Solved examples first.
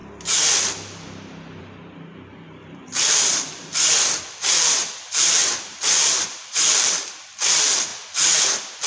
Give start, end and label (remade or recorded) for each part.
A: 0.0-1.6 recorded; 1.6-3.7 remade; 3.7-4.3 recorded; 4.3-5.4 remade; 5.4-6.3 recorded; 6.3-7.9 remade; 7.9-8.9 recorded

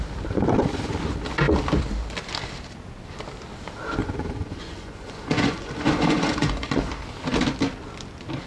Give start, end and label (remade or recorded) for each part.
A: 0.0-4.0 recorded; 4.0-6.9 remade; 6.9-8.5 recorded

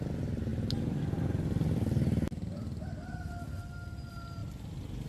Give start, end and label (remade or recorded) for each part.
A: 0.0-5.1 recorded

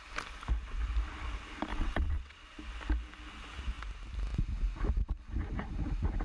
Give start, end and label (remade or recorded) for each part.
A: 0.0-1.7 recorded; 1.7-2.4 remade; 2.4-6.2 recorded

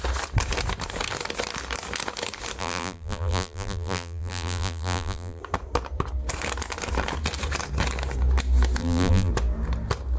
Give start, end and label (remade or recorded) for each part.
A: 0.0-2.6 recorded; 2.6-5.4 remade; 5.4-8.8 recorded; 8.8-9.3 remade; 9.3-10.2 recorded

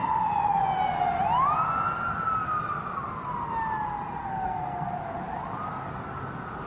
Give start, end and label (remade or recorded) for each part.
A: 0.0-4.2 recorded; 4.2-4.9 remade; 4.9-6.7 recorded